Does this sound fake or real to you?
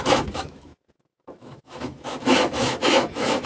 fake